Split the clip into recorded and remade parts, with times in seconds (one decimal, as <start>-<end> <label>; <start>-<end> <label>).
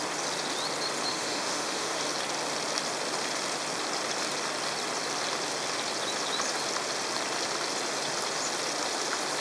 0.0-1.1 recorded; 1.1-2.0 remade; 2.0-9.4 recorded